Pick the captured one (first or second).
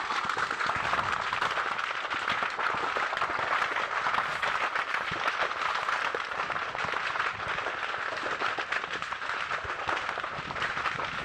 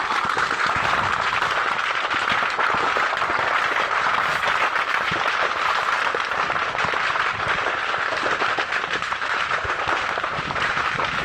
first